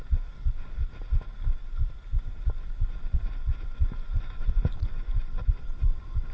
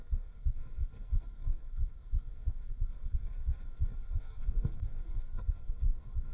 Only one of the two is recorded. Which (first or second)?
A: first